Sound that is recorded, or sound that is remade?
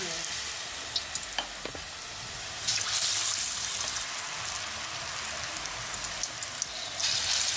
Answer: recorded